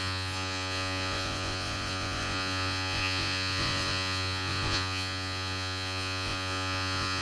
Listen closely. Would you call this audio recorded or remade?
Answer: remade